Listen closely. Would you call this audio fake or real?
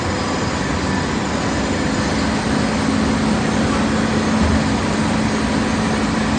real